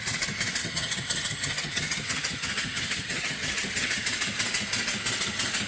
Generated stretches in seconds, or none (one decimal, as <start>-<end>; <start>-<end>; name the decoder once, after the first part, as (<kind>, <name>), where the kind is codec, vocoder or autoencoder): 0.6-4.0 (vocoder, HiFi-GAN)